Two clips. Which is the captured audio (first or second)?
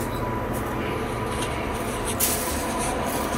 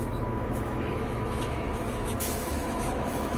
first